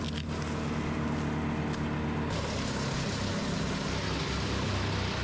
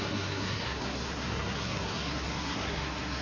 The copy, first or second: second